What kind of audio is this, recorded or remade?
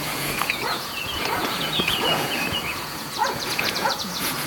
remade